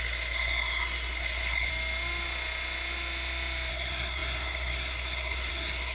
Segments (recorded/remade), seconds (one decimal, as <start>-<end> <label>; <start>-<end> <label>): 0.0-1.7 remade; 1.7-3.7 recorded; 3.7-5.9 remade